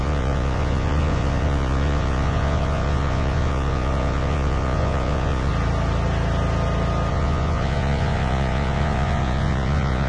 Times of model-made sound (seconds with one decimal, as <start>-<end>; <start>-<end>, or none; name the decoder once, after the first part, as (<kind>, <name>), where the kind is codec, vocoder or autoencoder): 0.0-5.5 (vocoder, Vocos); 7.1-10.1